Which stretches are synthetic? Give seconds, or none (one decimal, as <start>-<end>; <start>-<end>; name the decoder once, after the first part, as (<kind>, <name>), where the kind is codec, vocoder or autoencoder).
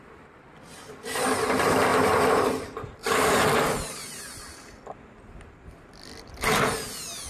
none